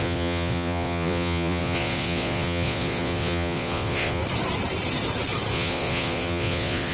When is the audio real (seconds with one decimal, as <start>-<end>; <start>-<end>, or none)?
4.2-5.5